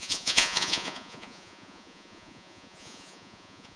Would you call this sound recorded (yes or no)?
no